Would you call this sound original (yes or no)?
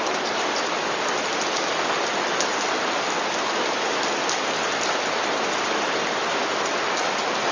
yes